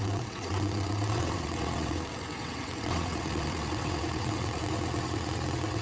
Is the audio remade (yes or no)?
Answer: yes